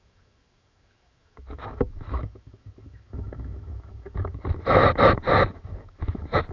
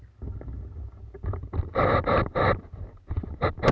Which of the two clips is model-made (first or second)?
first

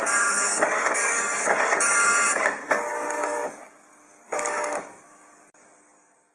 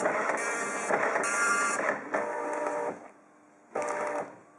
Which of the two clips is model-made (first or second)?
first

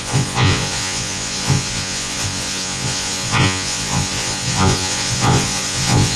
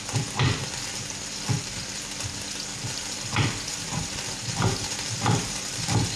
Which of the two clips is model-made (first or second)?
first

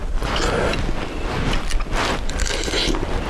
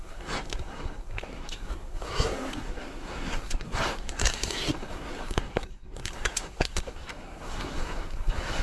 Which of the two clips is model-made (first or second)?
second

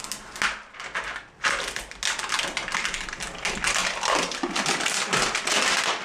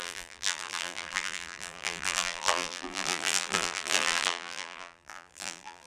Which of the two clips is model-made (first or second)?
second